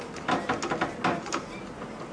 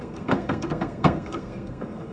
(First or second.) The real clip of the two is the first